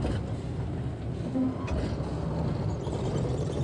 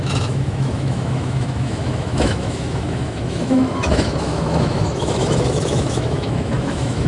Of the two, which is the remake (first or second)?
second